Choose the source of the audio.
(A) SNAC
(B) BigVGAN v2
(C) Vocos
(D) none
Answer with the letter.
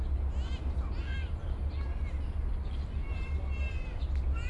D